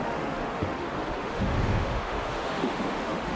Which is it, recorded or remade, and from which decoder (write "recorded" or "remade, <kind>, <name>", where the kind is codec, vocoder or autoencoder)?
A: remade, autoencoder, DAC-VAE